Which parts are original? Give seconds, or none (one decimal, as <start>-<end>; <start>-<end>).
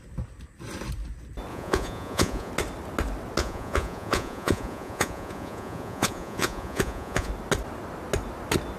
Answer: 0.0-1.5; 2.5-3.4; 7.3-8.8